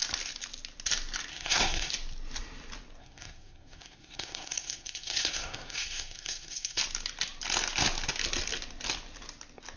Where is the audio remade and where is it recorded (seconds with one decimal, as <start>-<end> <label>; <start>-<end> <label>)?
0.0-1.3 recorded; 1.3-1.9 remade; 1.9-3.0 recorded; 3.0-6.8 remade; 6.8-9.8 recorded